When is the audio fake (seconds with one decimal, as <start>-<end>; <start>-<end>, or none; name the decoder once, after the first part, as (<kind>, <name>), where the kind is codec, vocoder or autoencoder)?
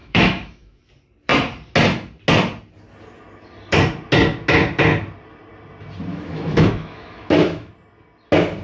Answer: 0.0-0.8 (autoencoder, DAC-VAE); 6.1-7.7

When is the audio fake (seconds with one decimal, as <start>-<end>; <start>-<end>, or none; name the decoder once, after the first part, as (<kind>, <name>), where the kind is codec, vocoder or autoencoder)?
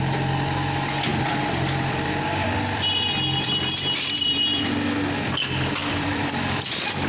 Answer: 1.1-4.6 (vocoder, BigVGAN v2); 5.8-7.1